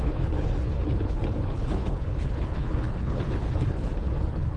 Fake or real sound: fake